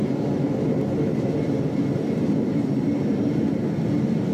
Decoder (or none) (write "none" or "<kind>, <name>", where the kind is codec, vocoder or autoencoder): none